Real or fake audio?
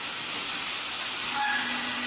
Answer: real